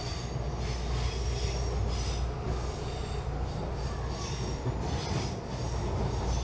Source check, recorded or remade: recorded